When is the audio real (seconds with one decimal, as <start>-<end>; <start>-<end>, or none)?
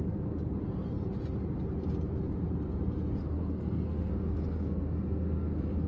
0.0-3.2